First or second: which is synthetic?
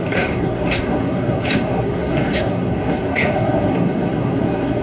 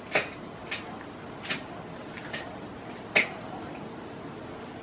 first